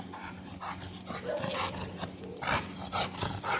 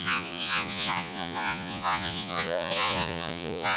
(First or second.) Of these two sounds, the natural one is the first